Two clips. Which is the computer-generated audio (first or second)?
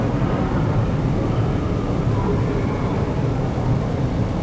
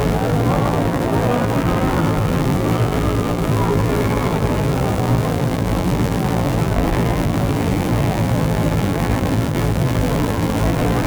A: second